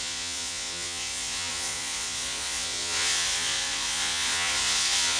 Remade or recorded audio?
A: remade